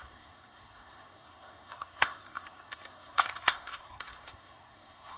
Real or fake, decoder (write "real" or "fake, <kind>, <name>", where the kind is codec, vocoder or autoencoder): fake, codec, SNAC